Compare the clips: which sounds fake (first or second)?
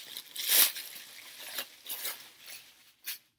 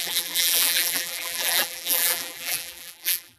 second